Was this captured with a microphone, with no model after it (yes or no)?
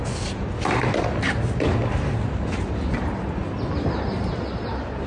yes